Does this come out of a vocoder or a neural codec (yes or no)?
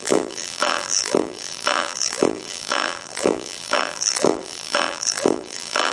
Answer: yes